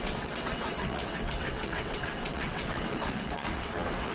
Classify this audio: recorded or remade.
remade